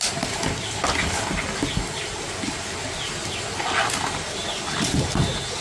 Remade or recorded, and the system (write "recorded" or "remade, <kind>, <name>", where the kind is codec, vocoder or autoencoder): recorded